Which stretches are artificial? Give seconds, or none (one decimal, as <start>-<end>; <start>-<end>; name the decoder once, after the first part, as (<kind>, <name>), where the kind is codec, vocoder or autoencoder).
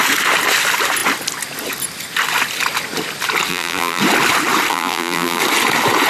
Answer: 3.5-4.0 (vocoder, BigVGAN v2); 4.7-5.4